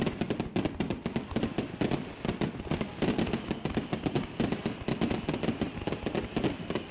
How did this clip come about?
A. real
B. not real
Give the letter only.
A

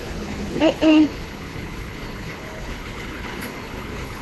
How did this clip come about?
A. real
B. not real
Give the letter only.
B